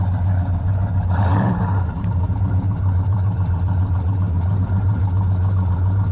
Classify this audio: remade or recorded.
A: remade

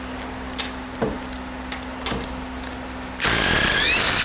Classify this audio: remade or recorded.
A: recorded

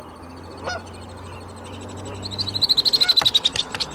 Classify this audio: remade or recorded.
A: recorded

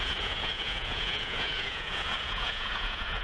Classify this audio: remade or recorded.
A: remade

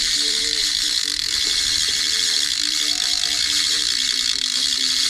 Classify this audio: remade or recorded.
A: remade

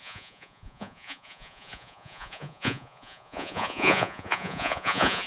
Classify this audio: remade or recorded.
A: remade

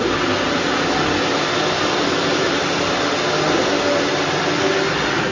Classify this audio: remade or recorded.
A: recorded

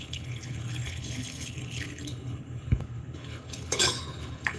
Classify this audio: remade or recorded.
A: remade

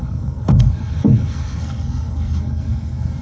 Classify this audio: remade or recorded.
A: remade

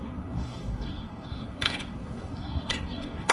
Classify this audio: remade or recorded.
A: remade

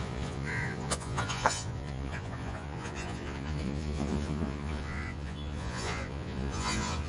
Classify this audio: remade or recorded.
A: remade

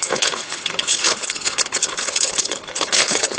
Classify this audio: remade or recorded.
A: remade